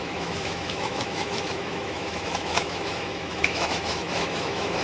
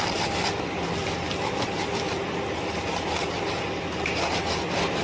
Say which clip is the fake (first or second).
first